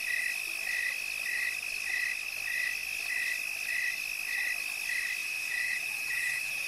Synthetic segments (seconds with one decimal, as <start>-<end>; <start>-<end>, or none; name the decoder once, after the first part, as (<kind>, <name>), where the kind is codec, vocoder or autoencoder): 5.2-6.7 (vocoder, BigVGAN v2)